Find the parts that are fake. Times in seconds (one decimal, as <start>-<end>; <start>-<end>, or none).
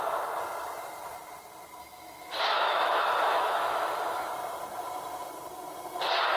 1.8-4.3